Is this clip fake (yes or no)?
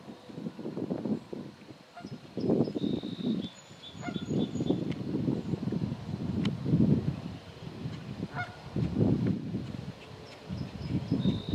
no